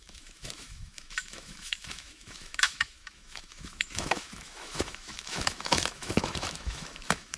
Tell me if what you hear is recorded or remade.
remade